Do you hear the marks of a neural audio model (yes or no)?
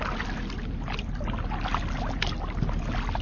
no